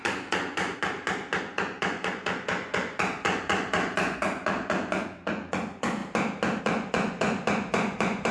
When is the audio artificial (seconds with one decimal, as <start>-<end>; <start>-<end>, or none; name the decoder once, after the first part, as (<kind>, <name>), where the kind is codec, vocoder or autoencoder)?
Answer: 0.0-0.8 (vocoder, Vocos); 1.4-6.0; 6.6-8.3